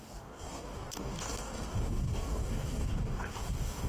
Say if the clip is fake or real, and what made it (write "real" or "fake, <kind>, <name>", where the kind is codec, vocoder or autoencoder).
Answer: fake, codec, DAC